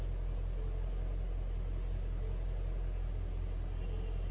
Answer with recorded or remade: recorded